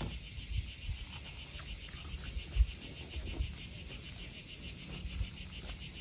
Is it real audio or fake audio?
real